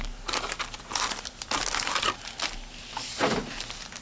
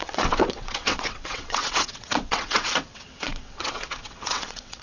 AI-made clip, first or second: second